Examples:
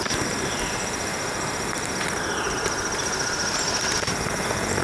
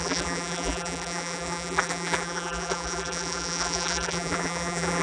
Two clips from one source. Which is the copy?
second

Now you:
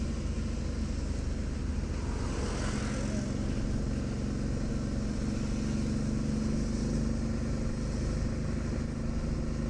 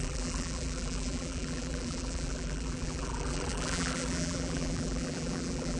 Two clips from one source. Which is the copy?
second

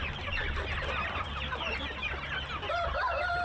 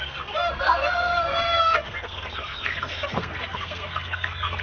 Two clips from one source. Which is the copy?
second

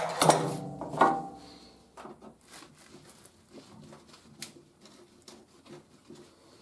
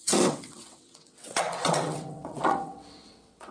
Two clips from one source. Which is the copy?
second